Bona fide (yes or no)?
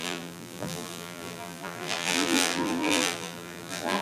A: no